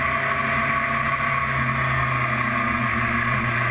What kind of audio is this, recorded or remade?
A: recorded